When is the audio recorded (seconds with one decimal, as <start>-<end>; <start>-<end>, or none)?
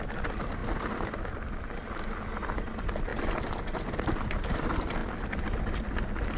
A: 0.0-6.4